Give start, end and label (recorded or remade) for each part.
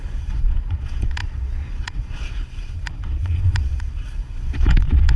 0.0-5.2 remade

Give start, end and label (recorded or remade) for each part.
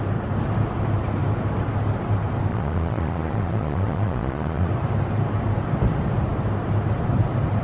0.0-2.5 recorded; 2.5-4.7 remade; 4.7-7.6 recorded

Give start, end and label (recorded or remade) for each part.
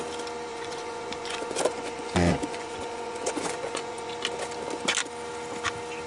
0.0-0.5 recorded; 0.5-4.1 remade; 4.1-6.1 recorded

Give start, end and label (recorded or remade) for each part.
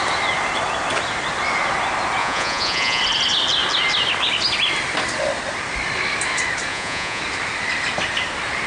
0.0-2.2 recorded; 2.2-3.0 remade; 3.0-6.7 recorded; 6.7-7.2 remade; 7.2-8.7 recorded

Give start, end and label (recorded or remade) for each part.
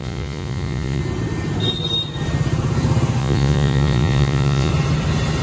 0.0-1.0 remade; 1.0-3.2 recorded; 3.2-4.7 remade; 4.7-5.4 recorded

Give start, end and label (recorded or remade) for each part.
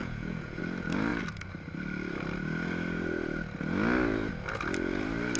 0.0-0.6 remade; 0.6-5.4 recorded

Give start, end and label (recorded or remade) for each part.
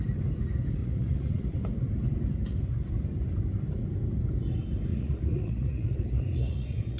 0.0-0.8 recorded; 0.8-1.6 remade; 1.6-4.9 recorded; 4.9-7.0 remade